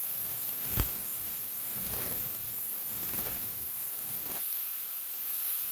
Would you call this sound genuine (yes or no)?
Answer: no